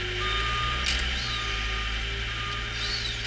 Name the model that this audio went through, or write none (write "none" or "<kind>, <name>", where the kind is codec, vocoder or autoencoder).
none